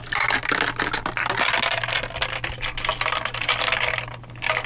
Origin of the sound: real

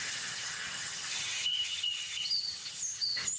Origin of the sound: fake